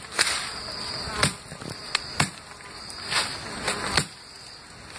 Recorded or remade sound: recorded